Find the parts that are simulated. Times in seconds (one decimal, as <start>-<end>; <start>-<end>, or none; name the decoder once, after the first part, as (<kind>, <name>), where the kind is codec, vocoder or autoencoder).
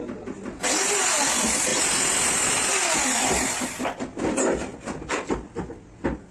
none